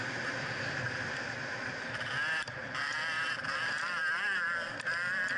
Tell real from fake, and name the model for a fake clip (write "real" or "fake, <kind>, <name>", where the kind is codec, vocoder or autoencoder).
real